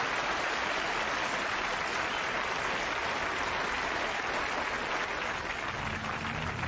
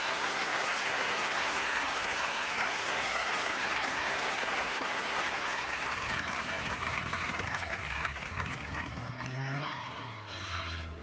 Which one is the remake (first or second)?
second